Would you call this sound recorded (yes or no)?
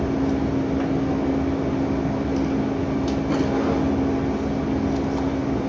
yes